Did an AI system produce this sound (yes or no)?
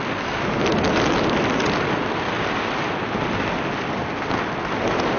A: no